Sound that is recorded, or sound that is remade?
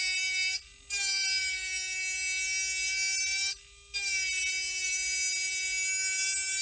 recorded